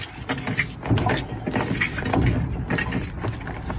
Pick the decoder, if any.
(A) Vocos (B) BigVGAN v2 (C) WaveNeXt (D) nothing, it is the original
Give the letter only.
D